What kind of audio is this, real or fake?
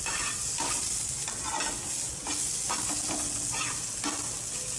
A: real